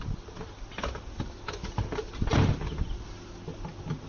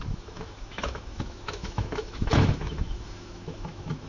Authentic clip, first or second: first